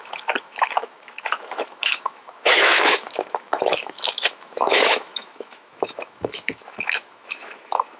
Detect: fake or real fake